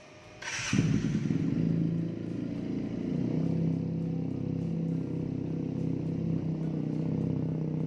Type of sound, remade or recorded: recorded